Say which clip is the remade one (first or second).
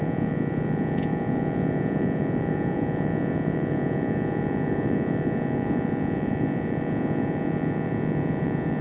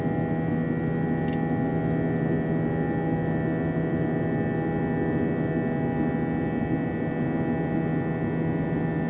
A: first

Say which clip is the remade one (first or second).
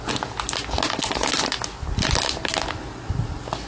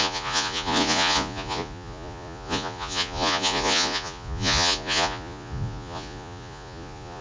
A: second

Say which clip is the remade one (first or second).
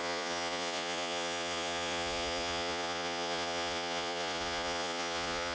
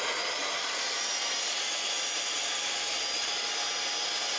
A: first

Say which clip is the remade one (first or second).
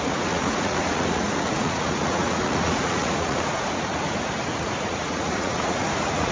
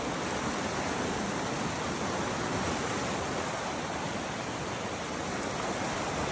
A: first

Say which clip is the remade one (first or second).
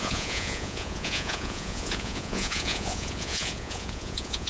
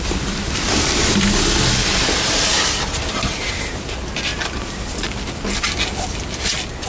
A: first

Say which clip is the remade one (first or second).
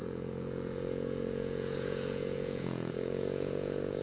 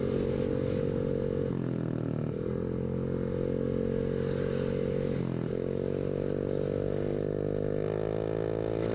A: first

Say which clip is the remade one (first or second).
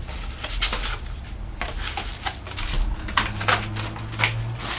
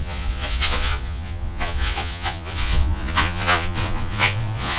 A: second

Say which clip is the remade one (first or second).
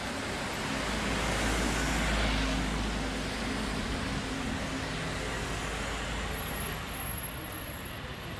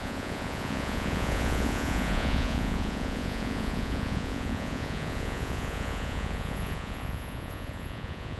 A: second